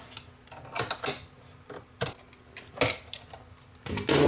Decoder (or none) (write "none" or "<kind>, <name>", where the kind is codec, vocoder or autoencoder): none